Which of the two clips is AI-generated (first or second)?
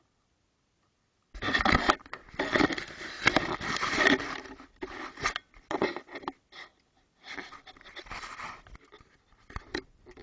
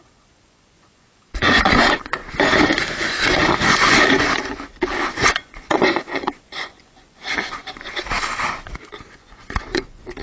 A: second